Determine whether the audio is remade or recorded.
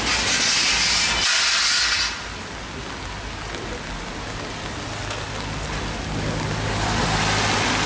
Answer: recorded